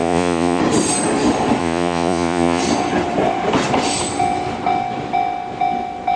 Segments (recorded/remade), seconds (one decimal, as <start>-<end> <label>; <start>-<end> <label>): 0.0-0.6 remade; 0.6-1.6 recorded; 1.6-2.6 remade; 2.6-6.2 recorded